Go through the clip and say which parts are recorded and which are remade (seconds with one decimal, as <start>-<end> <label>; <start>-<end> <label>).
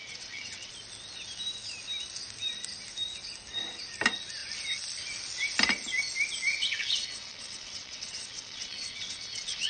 0.0-0.7 remade; 0.7-6.5 recorded; 6.5-9.7 remade